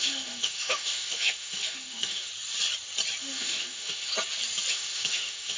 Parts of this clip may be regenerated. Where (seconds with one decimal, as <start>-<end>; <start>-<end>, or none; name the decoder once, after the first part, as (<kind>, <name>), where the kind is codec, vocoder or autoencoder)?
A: 0.0-2.3 (autoencoder, DAC-VAE); 3.2-4.1; 4.7-5.6